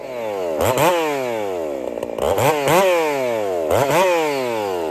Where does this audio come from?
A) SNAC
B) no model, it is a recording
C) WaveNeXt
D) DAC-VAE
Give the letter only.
B